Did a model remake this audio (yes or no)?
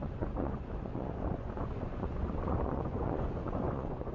yes